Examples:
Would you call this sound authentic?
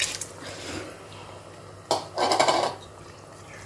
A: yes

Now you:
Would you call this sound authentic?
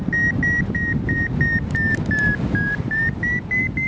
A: yes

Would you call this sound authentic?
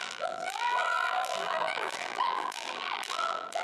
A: no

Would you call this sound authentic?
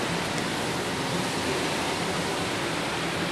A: yes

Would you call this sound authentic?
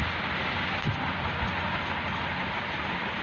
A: yes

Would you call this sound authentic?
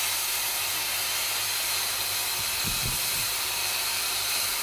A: no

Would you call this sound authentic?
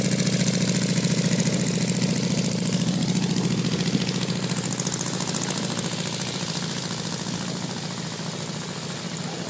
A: yes